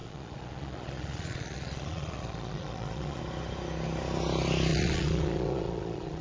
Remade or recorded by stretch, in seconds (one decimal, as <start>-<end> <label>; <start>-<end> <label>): 0.0-3.2 remade; 3.2-4.7 recorded; 4.7-6.2 remade